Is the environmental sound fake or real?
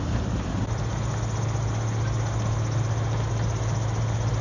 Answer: real